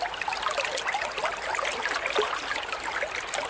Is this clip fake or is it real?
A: real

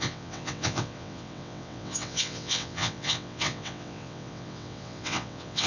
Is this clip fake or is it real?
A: fake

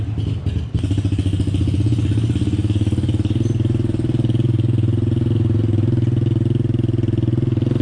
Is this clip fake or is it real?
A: real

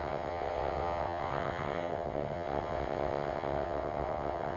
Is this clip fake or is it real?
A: fake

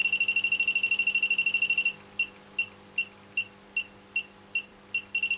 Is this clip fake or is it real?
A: real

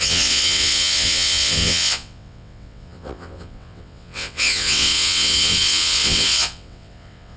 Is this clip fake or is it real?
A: fake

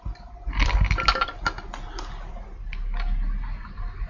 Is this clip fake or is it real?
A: real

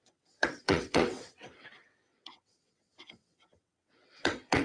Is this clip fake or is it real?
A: fake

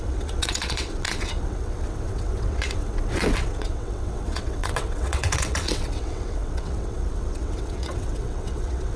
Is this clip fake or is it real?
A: fake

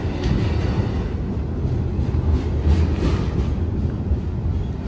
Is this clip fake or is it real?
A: real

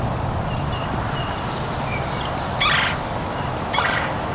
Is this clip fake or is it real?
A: real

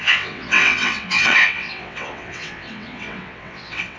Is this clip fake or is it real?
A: fake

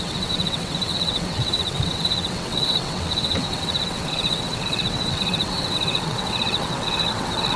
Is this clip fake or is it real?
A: fake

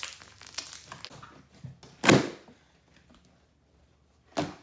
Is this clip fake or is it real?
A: real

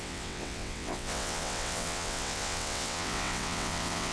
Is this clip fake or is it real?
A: fake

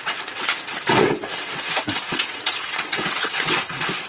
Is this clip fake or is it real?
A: fake